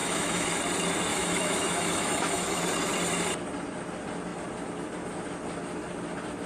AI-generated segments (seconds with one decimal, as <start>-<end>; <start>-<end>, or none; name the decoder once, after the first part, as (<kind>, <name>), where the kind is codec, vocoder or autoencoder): 0.0-0.5 (autoencoder, DAC-VAE); 1.1-2.6